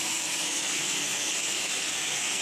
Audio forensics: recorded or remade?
remade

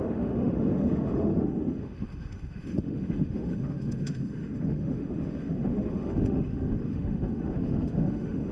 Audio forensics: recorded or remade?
remade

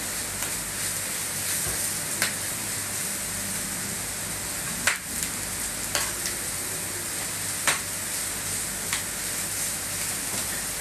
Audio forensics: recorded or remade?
recorded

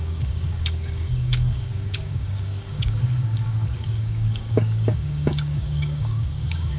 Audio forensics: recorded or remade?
remade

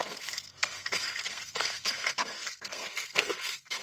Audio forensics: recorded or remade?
remade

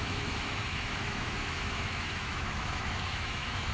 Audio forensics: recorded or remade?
remade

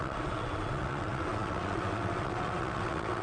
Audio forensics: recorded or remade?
remade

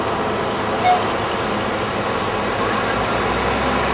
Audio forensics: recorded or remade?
recorded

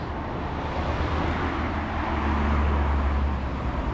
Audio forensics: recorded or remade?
recorded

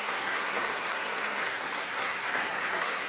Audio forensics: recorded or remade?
remade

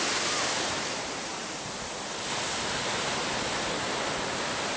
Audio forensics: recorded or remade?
recorded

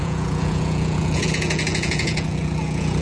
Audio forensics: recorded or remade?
remade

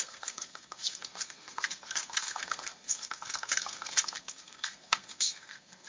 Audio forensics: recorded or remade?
remade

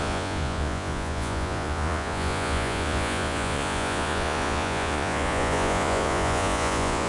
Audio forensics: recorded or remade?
remade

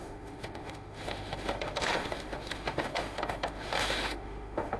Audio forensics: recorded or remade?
remade